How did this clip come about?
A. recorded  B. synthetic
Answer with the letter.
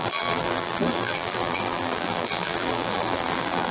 B